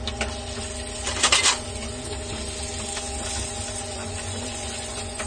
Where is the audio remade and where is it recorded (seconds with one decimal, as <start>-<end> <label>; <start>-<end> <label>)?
0.0-3.9 recorded; 3.9-5.3 remade